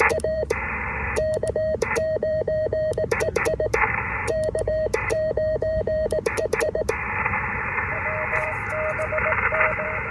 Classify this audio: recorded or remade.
remade